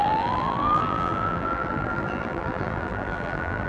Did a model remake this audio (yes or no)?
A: yes